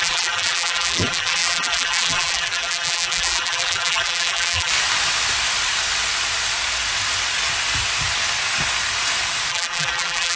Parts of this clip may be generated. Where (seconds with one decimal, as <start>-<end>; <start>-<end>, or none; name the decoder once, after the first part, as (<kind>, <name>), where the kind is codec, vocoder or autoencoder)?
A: 0.0-4.7 (vocoder, BigVGAN v2); 9.5-10.4